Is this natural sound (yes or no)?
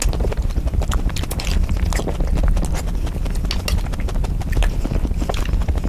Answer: yes